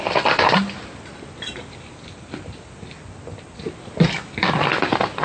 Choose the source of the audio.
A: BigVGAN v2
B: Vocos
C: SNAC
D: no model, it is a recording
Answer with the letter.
D